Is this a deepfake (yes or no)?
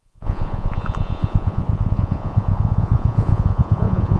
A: yes